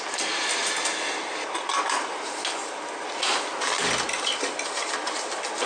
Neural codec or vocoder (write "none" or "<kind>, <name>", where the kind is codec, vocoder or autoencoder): none